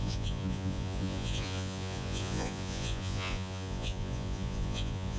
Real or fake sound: fake